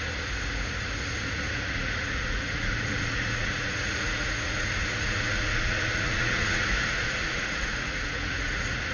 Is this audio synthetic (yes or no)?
yes